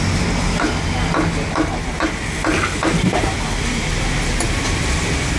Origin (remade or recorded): recorded